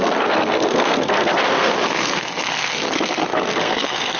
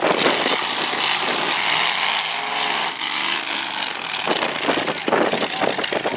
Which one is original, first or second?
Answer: second